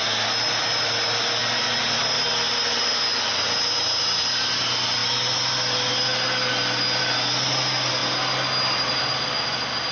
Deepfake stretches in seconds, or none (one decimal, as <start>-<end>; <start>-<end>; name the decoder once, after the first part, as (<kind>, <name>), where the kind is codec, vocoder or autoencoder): none